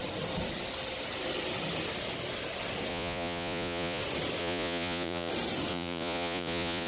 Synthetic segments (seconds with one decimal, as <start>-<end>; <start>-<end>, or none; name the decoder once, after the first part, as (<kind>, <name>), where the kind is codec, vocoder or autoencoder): 2.9-4.0 (vocoder, Vocos); 4.4-5.3; 5.7-6.9